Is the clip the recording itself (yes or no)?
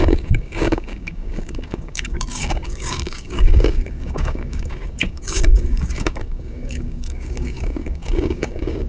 no